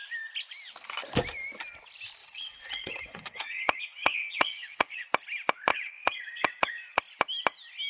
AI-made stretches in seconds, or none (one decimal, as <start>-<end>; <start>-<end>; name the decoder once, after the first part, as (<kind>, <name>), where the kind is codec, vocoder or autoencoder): 2.2-5.1 (vocoder, WaveNeXt); 5.7-7.0